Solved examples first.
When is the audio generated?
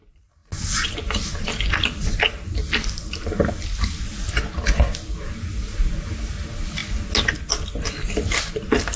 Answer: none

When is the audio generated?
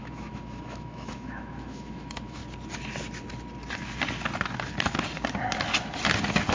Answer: 0.0-2.4 (autoencoder, DAC-VAE)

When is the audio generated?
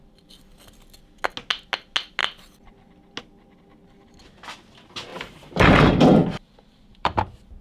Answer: 5.1-7.6 (vocoder, BigVGAN v2)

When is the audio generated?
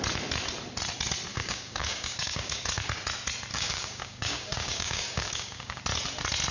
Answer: 1.3-2.6 (codec, DAC); 3.5-5.8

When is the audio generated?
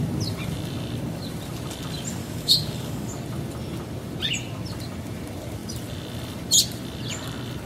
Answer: 2.2-3.1 (codec, DAC)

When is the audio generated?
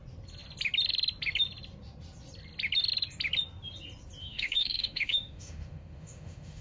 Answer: 4.2-6.6 (autoencoder, DAC-VAE)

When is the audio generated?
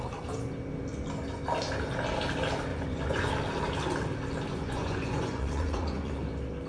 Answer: 2.7-3.3 (vocoder, Vocos); 4.5-6.1